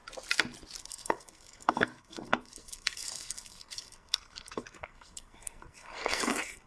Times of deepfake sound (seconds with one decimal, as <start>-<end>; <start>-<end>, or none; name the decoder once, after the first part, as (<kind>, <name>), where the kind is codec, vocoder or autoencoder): 0.8-6.7 (codec, SNAC)